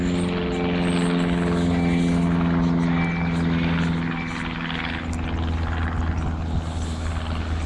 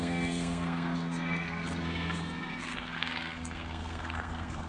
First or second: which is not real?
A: second